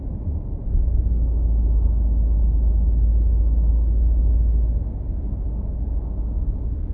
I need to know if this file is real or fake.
real